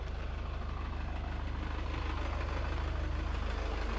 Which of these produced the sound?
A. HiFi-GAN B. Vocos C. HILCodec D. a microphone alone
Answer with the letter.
D